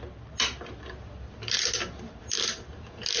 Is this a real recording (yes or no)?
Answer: yes